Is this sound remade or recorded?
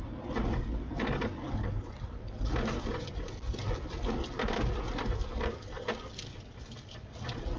recorded